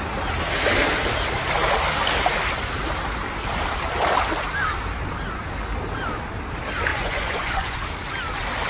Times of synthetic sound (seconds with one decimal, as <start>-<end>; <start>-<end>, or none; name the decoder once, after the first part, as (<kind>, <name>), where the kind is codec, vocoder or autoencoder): 6.9-7.8 (vocoder, Vocos)